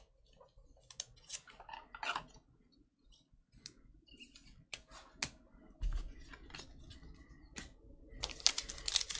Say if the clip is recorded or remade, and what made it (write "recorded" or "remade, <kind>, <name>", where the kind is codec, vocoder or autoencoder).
recorded